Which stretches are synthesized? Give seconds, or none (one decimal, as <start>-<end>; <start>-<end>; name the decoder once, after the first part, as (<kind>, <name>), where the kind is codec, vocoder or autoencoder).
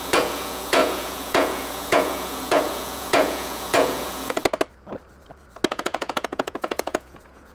0.0-4.4 (vocoder, Vocos); 5.7-7.5